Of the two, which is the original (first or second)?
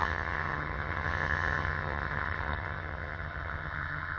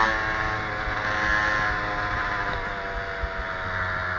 second